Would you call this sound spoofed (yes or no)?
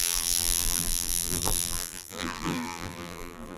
yes